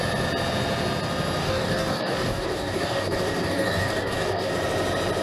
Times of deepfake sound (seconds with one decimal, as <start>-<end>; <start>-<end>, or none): 1.4-4.5